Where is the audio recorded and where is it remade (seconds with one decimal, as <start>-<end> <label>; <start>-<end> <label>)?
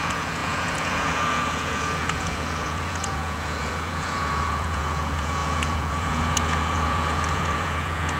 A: 0.0-8.2 remade